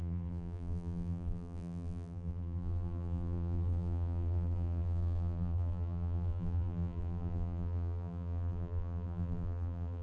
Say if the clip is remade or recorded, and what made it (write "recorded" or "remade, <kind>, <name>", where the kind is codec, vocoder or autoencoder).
remade, vocoder, BigVGAN v2